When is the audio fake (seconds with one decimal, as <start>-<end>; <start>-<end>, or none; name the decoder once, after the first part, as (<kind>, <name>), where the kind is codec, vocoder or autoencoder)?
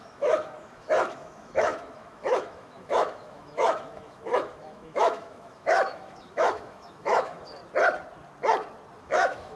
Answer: 0.0-7.6 (autoencoder, DAC-VAE); 9.0-9.6